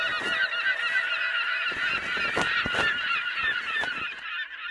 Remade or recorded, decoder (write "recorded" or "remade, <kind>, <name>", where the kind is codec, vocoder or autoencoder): recorded